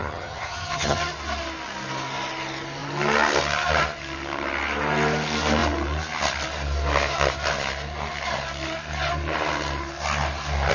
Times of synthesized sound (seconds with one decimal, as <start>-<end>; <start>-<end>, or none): 0.0-1.0